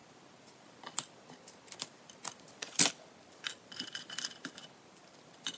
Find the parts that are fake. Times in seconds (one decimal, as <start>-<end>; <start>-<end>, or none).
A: 0.0-2.9; 4.6-5.6